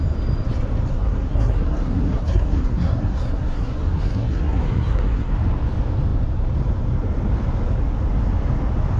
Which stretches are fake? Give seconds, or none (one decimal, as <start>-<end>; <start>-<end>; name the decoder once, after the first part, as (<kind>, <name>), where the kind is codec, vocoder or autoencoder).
0.9-5.3 (codec, SNAC)